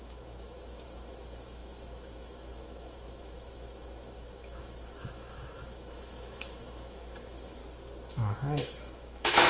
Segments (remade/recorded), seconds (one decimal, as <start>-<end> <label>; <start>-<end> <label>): 0.0-7.6 remade; 7.6-8.1 recorded; 8.1-9.5 remade